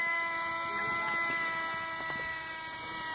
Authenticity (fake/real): real